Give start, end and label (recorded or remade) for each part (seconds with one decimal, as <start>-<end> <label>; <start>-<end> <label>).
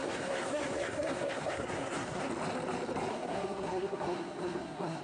0.0-2.3 remade; 2.3-3.1 recorded; 3.1-5.0 remade